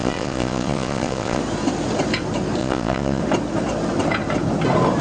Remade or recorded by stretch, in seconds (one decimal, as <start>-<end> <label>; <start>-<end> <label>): 0.0-1.4 remade; 1.4-2.6 recorded; 2.6-3.2 remade; 3.2-5.0 recorded